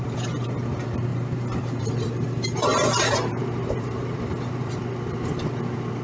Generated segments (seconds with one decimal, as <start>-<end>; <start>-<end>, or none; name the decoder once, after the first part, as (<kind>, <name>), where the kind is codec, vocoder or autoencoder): 1.1-4.7 (vocoder, BigVGAN v2)